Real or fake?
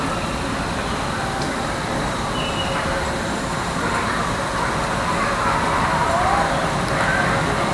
real